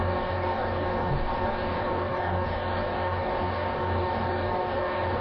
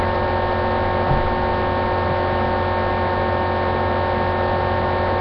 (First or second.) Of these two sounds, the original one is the second